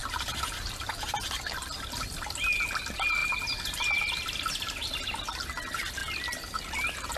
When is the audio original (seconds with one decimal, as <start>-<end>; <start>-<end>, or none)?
0.0-7.2